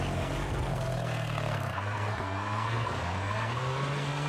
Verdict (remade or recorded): remade